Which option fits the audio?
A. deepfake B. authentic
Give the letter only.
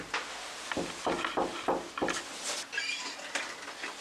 B